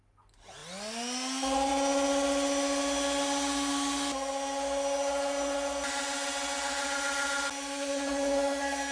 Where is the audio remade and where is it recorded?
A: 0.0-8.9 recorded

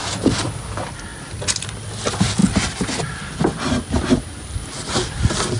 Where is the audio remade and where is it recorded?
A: 0.0-5.6 recorded

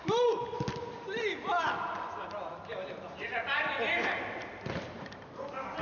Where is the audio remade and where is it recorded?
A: 0.0-5.8 recorded

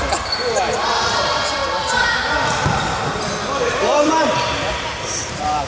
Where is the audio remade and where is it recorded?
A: 0.0-1.6 remade; 1.6-3.6 recorded; 3.6-5.7 remade